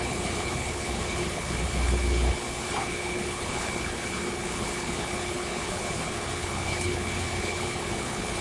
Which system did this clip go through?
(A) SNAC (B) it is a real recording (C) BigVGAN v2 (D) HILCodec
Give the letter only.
D